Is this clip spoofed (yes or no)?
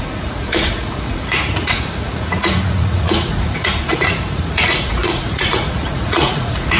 yes